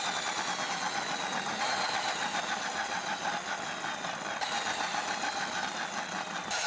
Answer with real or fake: real